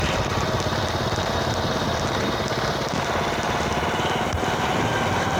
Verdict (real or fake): real